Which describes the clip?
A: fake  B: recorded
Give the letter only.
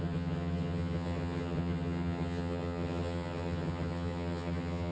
A